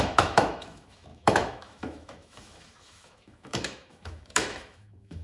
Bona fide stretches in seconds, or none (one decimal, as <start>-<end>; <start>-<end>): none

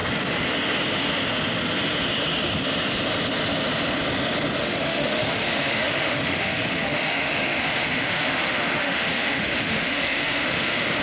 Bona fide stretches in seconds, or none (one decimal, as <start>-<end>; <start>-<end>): 0.0-4.6

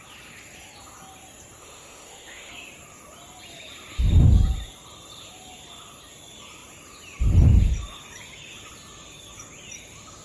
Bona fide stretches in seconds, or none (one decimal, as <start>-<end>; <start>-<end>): 0.0-1.6; 2.5-10.2

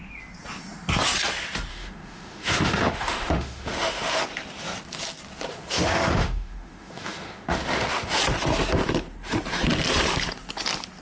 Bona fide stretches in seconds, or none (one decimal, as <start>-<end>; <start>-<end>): 0.0-1.7; 4.2-5.5; 8.2-11.0

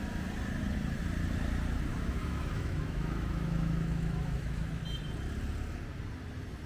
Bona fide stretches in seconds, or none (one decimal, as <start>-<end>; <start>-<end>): 0.0-1.9; 4.8-6.7